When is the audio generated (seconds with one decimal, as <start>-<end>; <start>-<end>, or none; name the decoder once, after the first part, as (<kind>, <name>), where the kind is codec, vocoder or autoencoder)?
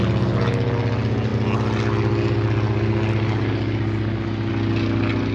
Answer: none